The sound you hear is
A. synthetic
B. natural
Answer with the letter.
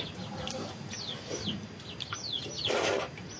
B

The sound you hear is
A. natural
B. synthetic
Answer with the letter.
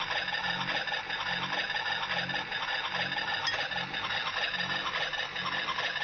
A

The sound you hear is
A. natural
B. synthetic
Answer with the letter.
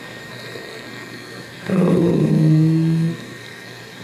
B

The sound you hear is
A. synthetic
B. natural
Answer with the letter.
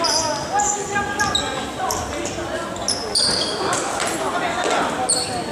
B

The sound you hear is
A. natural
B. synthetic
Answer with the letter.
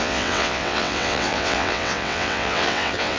B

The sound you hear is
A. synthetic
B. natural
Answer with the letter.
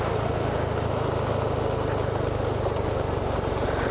B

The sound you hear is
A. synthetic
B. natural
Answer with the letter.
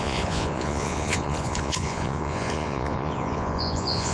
A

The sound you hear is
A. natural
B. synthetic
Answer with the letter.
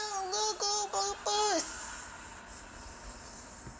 A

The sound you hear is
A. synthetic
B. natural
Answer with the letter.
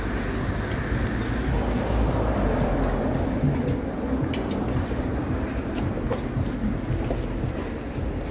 B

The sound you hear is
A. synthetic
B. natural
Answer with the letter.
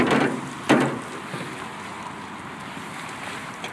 B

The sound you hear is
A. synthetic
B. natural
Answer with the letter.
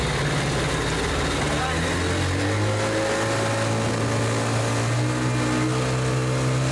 B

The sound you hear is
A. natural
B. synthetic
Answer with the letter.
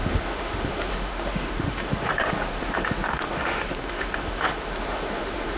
B